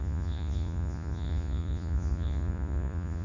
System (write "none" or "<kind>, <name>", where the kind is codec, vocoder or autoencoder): vocoder, Vocos